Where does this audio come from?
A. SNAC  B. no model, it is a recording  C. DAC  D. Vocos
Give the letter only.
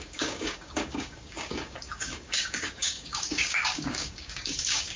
C